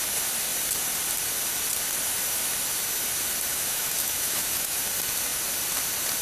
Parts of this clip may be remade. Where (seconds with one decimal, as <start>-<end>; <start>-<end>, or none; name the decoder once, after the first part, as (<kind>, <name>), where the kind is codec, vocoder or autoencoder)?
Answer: 3.5-4.8 (autoencoder, DAC-VAE)